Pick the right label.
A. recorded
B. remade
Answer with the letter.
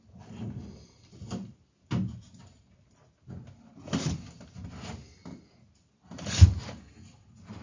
A